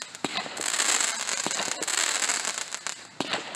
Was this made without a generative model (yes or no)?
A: yes